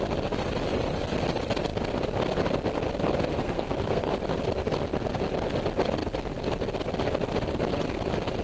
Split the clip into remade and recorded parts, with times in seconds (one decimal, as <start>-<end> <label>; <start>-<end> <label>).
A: 0.0-3.4 recorded; 3.4-4.1 remade; 4.1-8.4 recorded